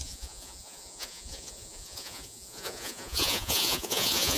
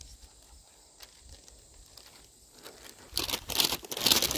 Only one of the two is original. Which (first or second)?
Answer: second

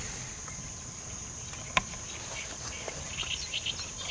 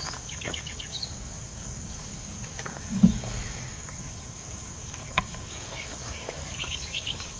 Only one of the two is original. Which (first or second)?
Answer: first